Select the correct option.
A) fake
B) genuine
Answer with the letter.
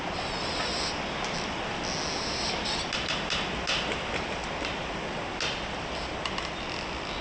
B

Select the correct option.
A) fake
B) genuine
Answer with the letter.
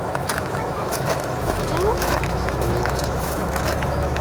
A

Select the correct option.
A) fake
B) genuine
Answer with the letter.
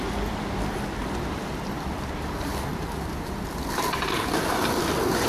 B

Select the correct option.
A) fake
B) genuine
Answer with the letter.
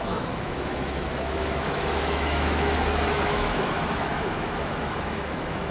A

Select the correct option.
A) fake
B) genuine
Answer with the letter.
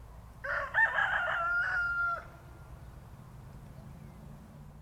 B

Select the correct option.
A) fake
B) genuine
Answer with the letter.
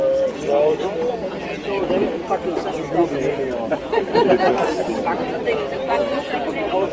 B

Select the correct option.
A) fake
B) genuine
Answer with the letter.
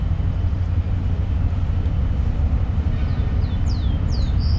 B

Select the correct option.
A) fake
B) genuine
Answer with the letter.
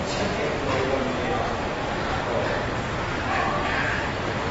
B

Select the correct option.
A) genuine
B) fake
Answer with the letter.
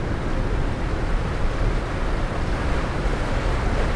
A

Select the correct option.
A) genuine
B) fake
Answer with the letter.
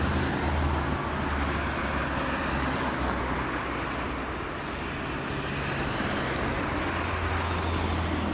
A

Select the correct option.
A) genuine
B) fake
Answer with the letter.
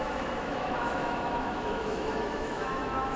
B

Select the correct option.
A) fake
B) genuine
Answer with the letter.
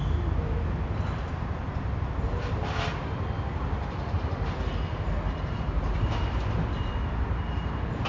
B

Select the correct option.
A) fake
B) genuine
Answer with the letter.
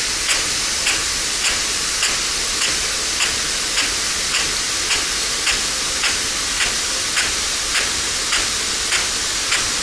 B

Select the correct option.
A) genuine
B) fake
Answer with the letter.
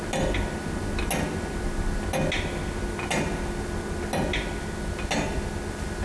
A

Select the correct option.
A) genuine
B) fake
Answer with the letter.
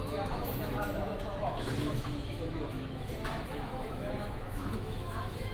B